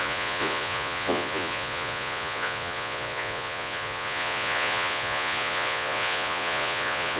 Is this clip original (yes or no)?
no